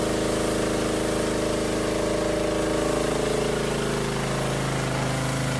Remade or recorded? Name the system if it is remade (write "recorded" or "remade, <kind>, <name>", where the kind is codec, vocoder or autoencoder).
recorded